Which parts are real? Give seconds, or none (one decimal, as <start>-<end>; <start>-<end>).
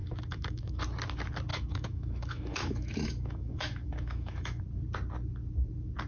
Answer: 0.8-1.5; 4.6-6.1